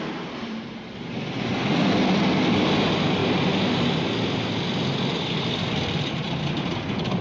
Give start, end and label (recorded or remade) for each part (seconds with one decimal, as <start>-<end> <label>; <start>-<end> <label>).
0.0-0.4 recorded; 0.4-1.5 remade; 1.5-3.2 recorded; 3.2-6.6 remade; 6.6-7.2 recorded